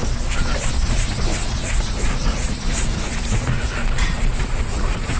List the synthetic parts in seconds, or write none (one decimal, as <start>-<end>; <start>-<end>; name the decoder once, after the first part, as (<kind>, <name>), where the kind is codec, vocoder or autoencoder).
0.7-3.8 (vocoder, Vocos); 4.6-5.2